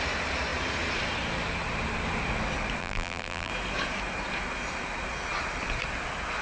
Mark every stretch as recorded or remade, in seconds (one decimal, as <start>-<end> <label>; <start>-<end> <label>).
0.0-2.8 recorded; 2.8-3.5 remade; 3.5-6.4 recorded